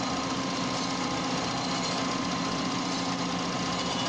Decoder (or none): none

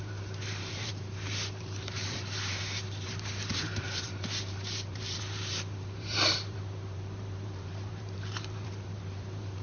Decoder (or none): vocoder, BigVGAN v2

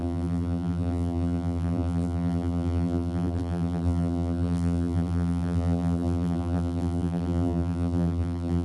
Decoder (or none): vocoder, BigVGAN v2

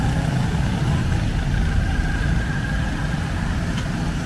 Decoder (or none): none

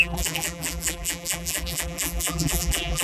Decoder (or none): vocoder, BigVGAN v2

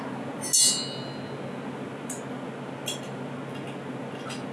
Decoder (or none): none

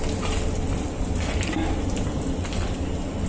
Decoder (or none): none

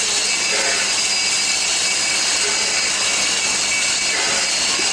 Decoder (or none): none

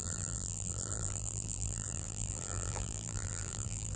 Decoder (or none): vocoder, BigVGAN v2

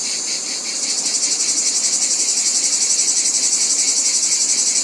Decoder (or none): vocoder, BigVGAN v2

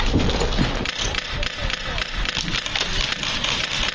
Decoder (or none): none